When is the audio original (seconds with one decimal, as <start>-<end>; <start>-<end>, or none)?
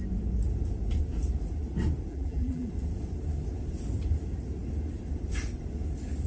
0.0-2.1; 2.7-6.3